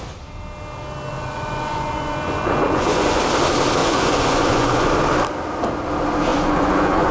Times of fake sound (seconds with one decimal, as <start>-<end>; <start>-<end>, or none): 1.1-3.2; 3.8-4.9; 6.3-7.1